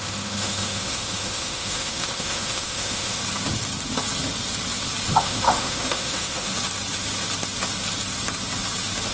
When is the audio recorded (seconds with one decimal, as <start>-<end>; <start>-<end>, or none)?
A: 3.2-5.2; 6.5-9.1